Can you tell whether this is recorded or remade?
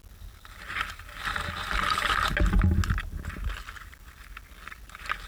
recorded